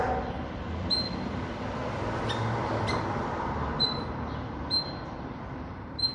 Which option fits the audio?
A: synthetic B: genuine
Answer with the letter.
A